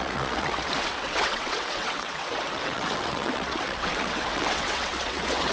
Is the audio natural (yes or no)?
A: no